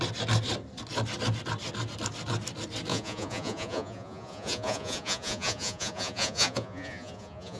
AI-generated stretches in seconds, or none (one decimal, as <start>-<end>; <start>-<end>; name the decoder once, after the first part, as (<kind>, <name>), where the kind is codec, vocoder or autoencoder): 2.9-7.6 (vocoder, Vocos)